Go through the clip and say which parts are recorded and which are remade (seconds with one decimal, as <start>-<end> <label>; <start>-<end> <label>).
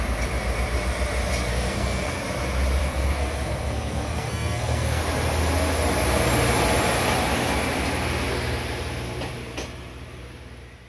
0.0-1.5 recorded; 1.5-2.2 remade; 2.2-2.8 recorded; 2.8-5.0 remade; 5.0-10.9 recorded